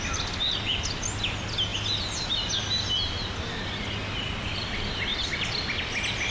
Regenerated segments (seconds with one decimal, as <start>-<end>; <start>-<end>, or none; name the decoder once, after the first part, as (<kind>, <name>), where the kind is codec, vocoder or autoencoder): none